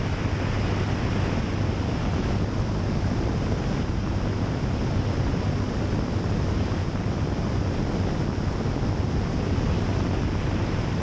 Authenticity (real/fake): real